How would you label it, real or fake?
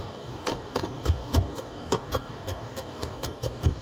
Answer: fake